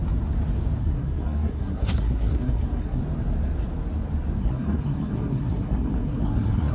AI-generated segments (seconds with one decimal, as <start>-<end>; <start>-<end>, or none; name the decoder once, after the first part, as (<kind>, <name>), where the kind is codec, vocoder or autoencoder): 0.8-3.0 (codec, SNAC); 4.4-6.7